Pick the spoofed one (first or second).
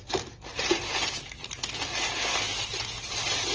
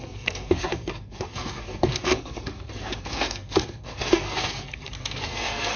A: second